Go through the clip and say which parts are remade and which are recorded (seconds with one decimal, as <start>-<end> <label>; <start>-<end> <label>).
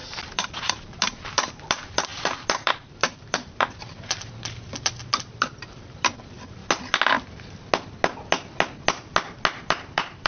0.0-6.6 remade; 6.6-9.7 recorded; 9.7-10.3 remade